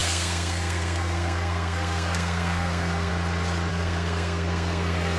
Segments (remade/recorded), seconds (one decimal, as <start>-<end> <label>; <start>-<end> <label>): 0.0-3.1 remade; 3.1-3.7 recorded; 3.7-5.2 remade